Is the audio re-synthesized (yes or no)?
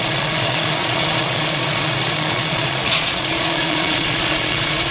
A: yes